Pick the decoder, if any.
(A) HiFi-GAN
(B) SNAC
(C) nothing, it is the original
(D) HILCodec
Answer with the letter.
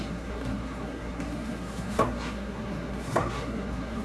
B